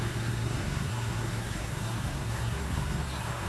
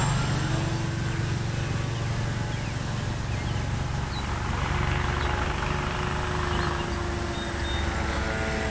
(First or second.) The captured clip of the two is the second